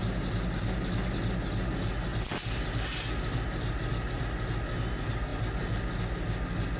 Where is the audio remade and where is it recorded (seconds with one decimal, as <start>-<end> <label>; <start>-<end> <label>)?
0.0-6.8 recorded